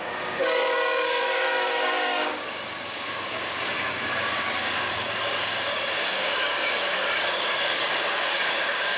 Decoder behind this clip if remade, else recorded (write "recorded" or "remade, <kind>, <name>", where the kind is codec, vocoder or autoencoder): remade, codec, DAC